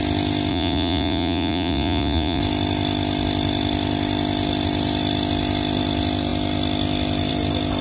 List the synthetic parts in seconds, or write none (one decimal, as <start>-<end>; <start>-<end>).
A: 0.5-2.4